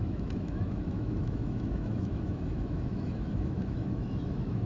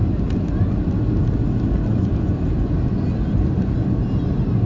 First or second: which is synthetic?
first